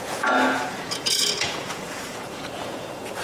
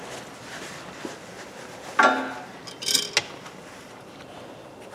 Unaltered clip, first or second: second